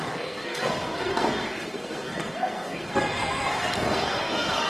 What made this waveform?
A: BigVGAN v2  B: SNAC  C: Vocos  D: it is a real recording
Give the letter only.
B